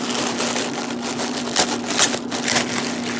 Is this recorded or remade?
recorded